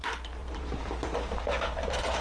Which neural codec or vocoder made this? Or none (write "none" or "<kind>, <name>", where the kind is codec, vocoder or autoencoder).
vocoder, BigVGAN v2